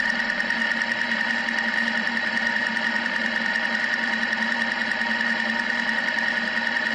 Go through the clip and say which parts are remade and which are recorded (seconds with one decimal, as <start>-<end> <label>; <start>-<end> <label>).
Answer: 0.0-6.9 recorded